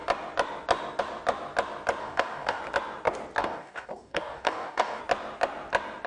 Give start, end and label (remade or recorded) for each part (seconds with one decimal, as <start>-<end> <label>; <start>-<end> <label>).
0.0-2.0 recorded; 2.0-2.6 remade; 2.6-3.4 recorded; 3.4-5.0 remade; 5.0-6.1 recorded